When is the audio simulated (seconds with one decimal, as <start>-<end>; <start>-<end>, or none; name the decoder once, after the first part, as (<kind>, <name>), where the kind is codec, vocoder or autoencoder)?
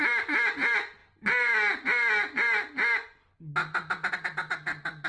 none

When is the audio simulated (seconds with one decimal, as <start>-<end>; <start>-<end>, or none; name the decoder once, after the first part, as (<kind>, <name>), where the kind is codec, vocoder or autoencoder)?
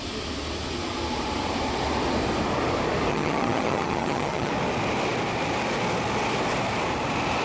3.1-4.5 (vocoder, HiFi-GAN)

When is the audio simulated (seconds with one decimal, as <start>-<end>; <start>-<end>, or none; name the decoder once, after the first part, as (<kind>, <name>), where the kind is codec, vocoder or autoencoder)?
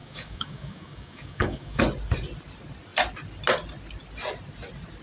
0.0-1.8 (codec, DAC)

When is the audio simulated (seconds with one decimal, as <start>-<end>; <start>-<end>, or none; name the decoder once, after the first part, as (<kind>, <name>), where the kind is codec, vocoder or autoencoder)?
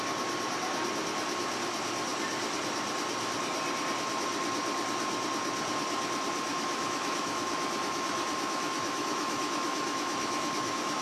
6.5-11.0 (autoencoder, DAC-VAE)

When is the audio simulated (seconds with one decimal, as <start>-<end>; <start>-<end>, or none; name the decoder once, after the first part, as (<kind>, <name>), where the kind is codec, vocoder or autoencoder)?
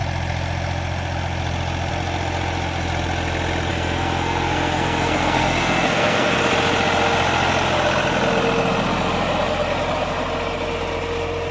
3.7-6.4 (codec, SNAC)